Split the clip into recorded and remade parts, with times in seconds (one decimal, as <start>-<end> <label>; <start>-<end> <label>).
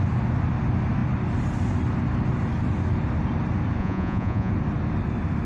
0.0-3.8 recorded; 3.8-4.5 remade; 4.5-5.5 recorded